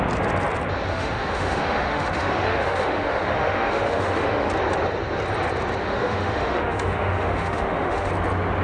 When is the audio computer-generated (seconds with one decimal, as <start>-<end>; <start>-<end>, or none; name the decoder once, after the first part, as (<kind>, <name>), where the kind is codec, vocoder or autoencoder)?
0.9-4.5 (autoencoder, DAC-VAE); 5.8-8.1